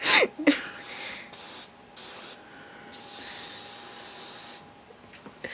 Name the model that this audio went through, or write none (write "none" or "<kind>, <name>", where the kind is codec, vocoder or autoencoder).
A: none